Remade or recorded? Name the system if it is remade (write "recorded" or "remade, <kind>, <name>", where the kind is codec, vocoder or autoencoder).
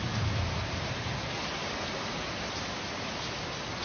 recorded